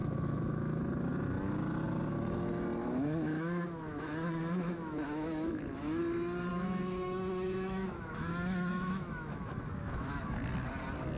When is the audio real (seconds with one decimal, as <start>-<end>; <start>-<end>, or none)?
0.8-2.8; 6.0-6.5; 10.4-11.2